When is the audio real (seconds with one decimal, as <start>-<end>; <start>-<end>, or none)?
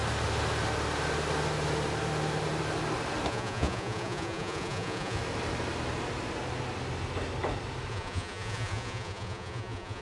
0.0-3.3; 5.2-7.9